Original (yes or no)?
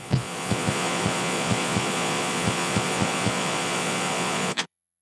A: no